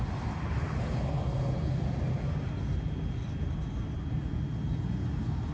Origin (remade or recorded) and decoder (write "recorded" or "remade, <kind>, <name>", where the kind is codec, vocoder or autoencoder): recorded